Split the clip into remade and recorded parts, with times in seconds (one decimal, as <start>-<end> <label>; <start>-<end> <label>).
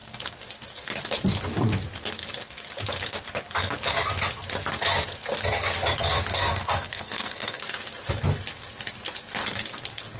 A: 0.0-6.3 recorded; 6.3-7.6 remade; 7.6-10.2 recorded